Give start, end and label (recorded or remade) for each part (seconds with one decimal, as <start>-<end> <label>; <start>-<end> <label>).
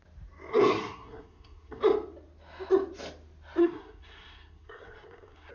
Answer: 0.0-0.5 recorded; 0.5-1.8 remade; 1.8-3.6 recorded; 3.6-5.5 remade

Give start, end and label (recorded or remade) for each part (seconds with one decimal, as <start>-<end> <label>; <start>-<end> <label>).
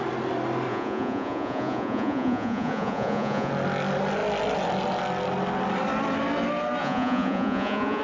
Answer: 0.0-0.7 recorded; 0.7-3.5 remade; 3.5-6.8 recorded; 6.8-8.0 remade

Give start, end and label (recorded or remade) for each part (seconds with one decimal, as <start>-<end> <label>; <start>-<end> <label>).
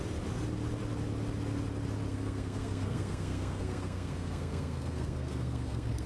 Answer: 0.0-2.1 recorded; 2.1-6.1 remade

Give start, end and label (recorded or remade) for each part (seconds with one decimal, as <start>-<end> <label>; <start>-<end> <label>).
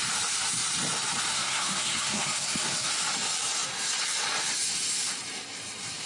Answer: 0.0-1.3 recorded; 1.3-2.9 remade; 2.9-6.1 recorded